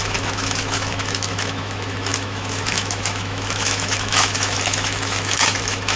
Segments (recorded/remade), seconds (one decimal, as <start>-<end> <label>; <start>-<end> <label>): 0.0-6.0 remade